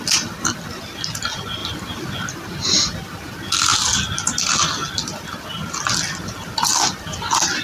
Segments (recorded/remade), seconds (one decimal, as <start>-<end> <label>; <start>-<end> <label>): 0.0-7.6 recorded